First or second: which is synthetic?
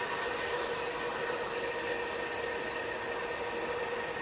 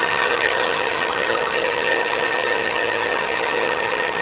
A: second